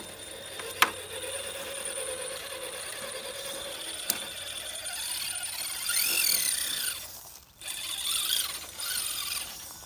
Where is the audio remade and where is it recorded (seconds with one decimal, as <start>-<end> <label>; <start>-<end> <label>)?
0.0-9.9 recorded